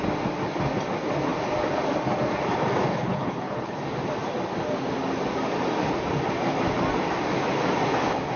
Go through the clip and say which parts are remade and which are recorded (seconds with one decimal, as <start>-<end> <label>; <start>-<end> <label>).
0.0-2.9 recorded; 2.9-3.8 remade; 3.8-8.4 recorded